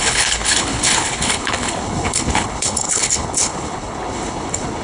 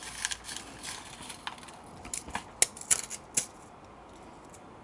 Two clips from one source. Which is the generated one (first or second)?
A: first